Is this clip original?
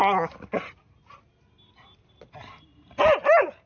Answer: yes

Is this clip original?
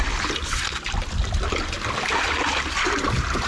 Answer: yes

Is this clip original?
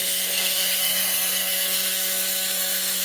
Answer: no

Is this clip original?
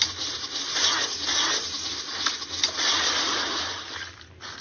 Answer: no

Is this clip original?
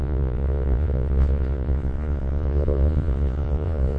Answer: no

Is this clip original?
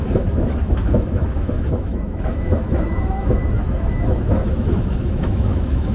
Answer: no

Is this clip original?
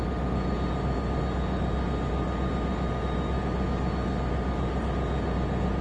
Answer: yes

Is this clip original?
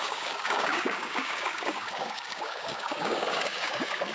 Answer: no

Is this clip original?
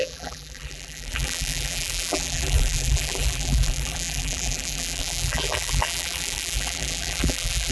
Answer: no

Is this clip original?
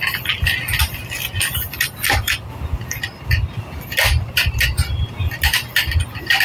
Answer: yes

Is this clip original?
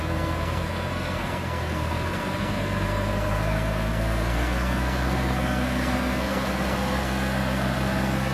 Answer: no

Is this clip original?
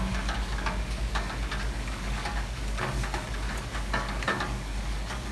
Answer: no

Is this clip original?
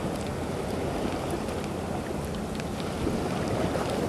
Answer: yes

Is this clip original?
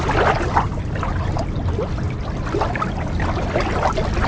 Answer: yes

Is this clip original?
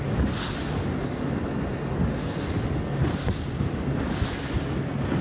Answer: yes